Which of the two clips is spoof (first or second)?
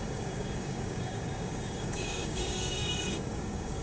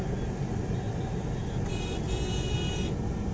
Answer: first